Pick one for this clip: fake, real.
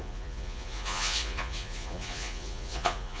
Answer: fake